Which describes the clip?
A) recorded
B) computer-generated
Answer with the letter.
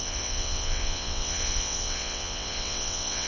B